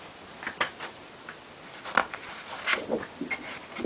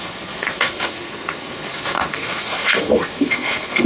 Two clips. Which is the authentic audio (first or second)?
first